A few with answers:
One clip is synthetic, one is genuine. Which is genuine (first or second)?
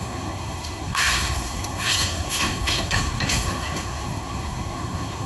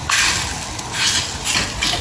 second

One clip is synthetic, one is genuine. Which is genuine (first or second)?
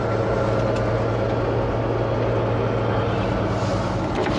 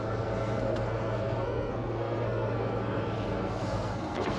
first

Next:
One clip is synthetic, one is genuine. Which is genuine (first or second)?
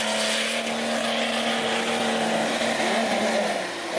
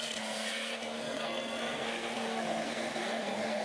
first